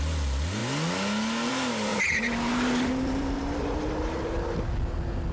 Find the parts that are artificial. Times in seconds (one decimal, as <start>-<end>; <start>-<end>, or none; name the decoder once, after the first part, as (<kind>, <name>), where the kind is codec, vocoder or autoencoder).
1.9-4.4 (vocoder, BigVGAN v2)